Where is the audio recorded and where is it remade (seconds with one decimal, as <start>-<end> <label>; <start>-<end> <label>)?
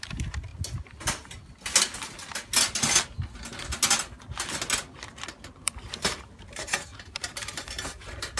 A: 0.0-0.5 remade; 0.5-5.5 recorded; 5.5-8.4 remade